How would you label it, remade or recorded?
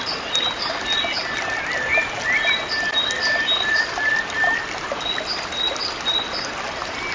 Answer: recorded